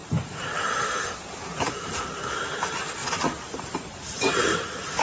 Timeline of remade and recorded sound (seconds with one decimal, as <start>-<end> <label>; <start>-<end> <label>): 0.0-2.6 remade; 2.6-3.0 recorded; 3.0-5.0 remade

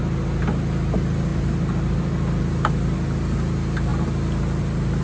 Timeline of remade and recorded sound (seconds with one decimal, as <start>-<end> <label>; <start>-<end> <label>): 0.0-5.0 recorded

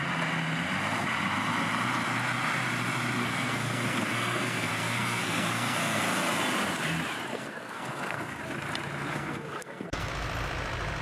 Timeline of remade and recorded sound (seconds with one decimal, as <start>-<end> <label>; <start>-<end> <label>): 0.0-3.2 recorded; 3.2-6.0 remade; 6.0-7.3 recorded; 7.3-8.4 remade; 8.4-9.1 recorded; 9.1-10.1 remade; 10.1-11.0 recorded

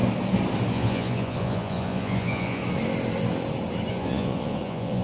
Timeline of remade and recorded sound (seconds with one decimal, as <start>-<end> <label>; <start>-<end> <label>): 0.0-0.7 recorded; 0.7-2.6 remade; 2.6-3.9 recorded; 3.9-5.0 remade

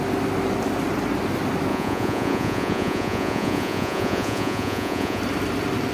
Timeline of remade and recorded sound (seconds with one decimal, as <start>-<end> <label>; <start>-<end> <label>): 0.0-1.7 recorded; 1.7-5.2 remade; 5.2-5.9 recorded